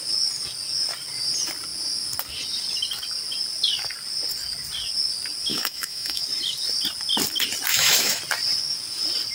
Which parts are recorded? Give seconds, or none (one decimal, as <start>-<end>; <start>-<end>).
0.0-5.5; 6.2-7.7; 8.2-9.3